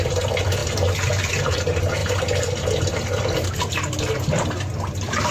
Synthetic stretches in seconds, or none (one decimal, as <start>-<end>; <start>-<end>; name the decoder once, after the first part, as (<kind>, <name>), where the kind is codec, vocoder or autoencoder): 2.0-3.5 (vocoder, BigVGAN v2)